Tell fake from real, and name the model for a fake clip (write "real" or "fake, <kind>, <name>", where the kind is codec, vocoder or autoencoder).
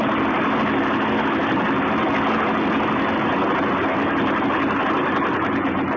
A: real